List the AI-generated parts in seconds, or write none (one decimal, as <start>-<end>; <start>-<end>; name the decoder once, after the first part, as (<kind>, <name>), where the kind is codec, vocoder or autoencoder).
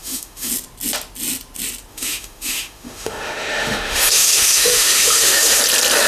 0.0-0.5 (autoencoder, DAC-VAE); 1.9-5.6